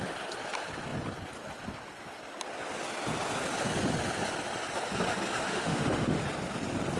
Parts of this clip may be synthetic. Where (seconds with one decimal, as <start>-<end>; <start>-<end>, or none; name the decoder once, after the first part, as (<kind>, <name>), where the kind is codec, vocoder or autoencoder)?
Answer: 5.5-6.2 (autoencoder, DAC-VAE)